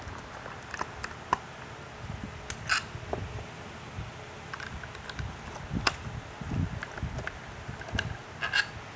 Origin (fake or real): real